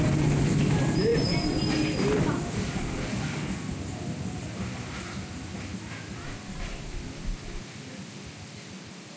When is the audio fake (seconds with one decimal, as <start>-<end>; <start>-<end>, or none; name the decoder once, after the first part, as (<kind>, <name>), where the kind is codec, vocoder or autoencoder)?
none